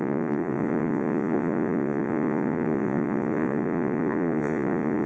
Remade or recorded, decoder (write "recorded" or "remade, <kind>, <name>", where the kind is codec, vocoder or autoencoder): remade, vocoder, Vocos